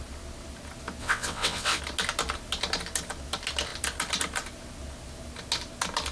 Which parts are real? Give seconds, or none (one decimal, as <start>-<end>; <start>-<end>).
0.0-1.0; 1.8-6.1